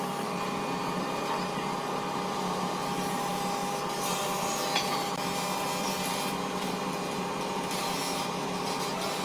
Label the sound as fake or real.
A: real